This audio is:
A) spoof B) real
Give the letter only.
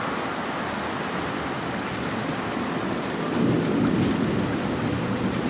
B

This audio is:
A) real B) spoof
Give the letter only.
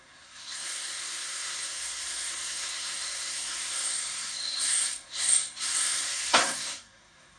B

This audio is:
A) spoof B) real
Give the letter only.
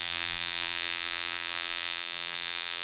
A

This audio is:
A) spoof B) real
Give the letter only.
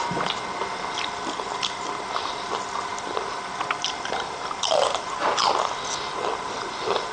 B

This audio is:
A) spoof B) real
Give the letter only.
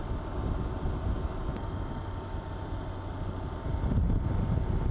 B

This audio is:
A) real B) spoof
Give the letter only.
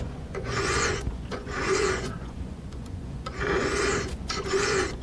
B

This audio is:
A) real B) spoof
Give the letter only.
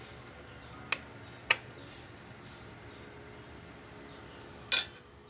A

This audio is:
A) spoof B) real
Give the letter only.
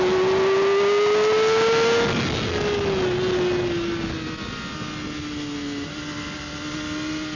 B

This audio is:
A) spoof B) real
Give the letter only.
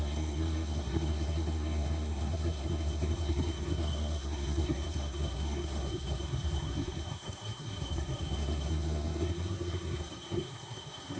A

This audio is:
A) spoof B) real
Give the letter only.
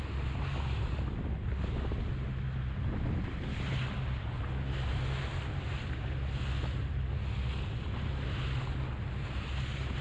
B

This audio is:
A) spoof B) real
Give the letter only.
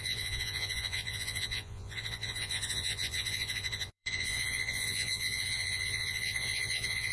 A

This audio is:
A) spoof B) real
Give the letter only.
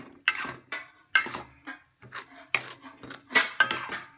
B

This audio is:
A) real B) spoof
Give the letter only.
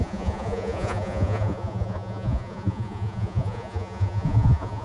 B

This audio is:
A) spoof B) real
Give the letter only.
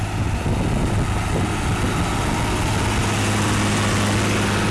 B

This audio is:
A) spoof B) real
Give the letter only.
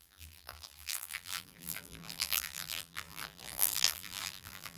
A